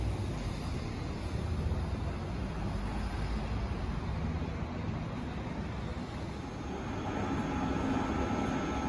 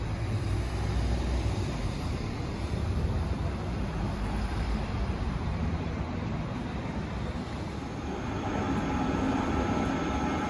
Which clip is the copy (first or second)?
second